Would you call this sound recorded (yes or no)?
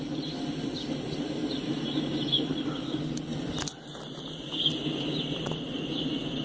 yes